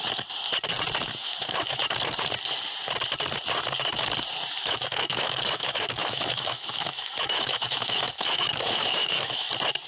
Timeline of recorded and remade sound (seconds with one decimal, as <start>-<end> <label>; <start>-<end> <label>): 0.0-1.2 recorded; 1.2-1.8 remade; 1.8-4.6 recorded; 4.6-9.5 remade; 9.5-9.9 recorded